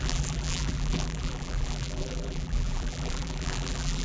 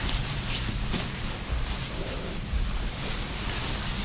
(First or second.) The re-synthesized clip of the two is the first